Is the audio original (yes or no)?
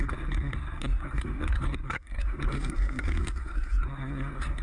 no